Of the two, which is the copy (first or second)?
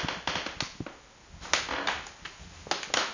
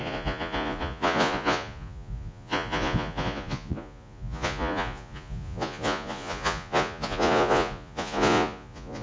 second